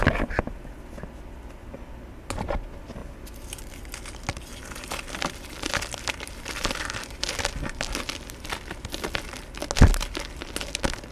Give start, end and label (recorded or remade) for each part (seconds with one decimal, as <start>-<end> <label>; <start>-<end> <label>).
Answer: 0.0-11.1 recorded